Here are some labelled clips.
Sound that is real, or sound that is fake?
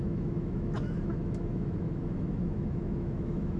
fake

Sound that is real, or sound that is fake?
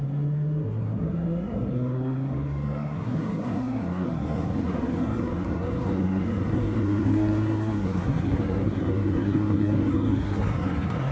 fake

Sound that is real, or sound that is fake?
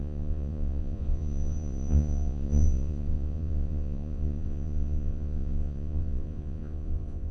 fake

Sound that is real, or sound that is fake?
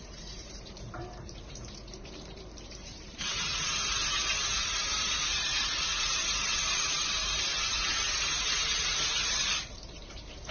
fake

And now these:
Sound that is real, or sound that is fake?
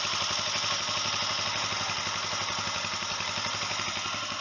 real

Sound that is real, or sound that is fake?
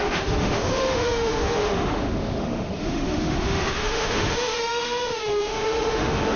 fake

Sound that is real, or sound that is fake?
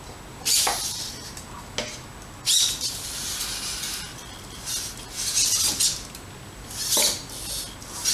real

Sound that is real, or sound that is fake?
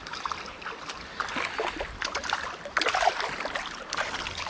real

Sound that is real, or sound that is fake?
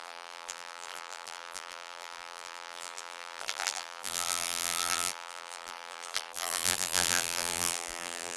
fake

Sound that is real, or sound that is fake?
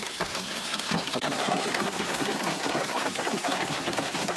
fake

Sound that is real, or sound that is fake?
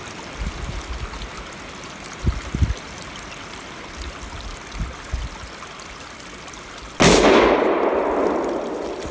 real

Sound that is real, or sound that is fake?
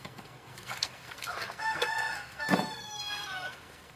fake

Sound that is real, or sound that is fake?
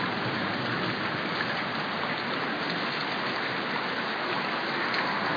real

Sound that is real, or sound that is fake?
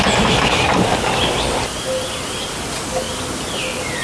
real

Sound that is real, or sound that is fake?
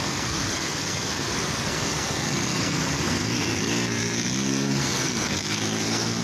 fake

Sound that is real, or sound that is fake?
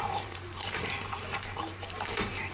fake